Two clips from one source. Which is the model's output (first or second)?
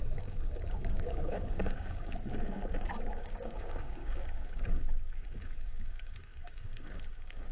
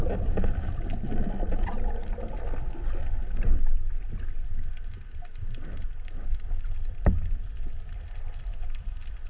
first